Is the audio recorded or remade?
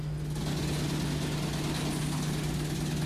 recorded